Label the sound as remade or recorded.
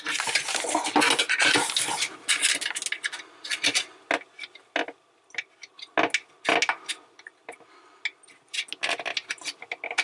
recorded